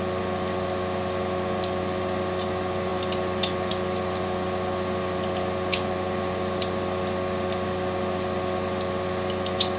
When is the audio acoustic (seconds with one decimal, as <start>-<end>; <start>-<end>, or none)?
0.0-9.8